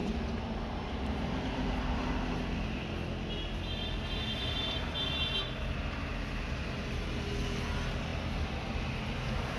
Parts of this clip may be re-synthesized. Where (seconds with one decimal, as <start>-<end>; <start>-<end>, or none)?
0.0-1.8